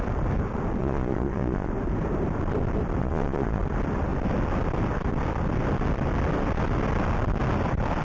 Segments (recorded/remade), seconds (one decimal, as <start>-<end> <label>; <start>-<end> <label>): 0.0-0.8 recorded; 0.8-1.7 remade; 1.7-3.0 recorded; 3.0-3.6 remade; 3.6-8.0 recorded